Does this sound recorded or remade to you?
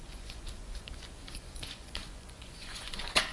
remade